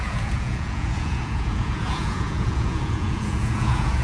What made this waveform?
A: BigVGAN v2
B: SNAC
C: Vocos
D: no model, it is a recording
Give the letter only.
C